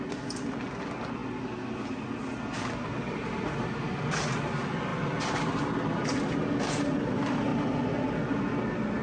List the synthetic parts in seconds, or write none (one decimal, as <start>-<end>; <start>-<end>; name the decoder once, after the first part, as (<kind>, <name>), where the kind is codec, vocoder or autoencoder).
none